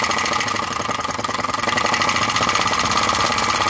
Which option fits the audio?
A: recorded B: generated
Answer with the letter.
A